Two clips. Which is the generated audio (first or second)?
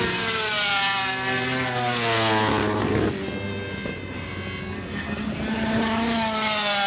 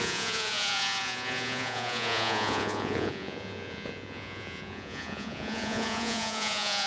second